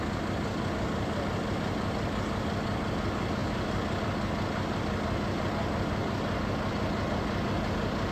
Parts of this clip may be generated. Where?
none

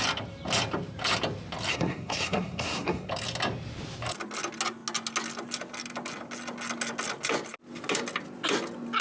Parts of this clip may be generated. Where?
1.7-3.1 (codec, SNAC)

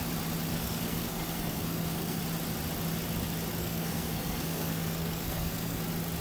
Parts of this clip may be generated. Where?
0.5-2.2 (codec, SNAC); 3.6-5.8

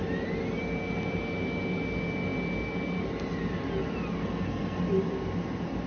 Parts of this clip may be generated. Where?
4.2-4.8 (codec, SNAC)

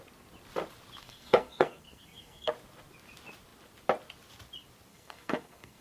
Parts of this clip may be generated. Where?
1.0-2.5 (codec, SNAC); 4.9-5.8

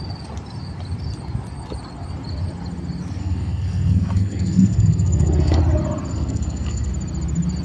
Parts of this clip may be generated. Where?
3.2-5.6 (codec, SNAC); 6.1-6.9

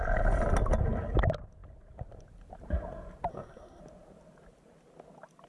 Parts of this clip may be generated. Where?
3.3-3.8 (codec, SNAC)

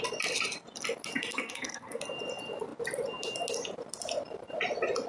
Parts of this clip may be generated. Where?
1.3-2.0 (codec, SNAC)